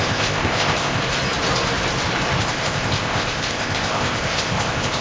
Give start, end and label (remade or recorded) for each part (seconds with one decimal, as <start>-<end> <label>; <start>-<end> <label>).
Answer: 0.0-1.0 remade; 1.0-2.4 recorded; 2.4-5.0 remade